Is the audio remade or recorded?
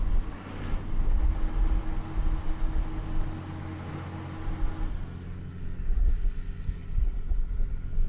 recorded